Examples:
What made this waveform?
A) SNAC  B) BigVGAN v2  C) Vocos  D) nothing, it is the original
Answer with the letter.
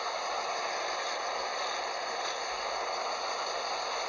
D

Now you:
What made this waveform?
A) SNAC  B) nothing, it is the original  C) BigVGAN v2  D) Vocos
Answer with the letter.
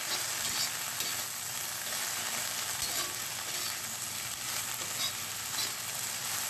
B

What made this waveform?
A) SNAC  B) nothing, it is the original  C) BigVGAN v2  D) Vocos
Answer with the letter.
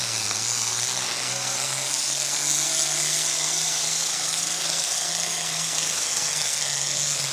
A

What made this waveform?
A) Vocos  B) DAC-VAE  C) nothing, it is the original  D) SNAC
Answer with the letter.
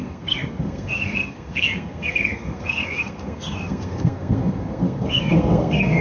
D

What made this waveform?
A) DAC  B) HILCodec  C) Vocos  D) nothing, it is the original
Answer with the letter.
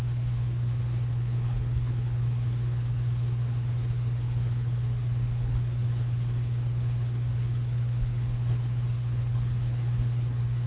B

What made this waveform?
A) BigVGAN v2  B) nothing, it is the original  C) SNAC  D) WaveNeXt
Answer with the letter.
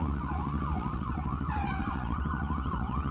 D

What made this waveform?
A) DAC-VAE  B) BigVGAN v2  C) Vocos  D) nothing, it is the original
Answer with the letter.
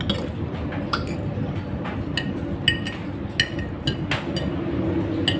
D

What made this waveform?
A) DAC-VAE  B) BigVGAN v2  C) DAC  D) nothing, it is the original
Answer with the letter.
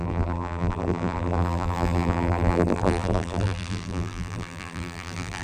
B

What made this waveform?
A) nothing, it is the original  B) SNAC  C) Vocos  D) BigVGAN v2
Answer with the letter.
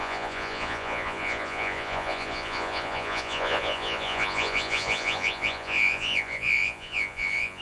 C